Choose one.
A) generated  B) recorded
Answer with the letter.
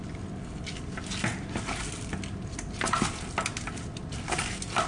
B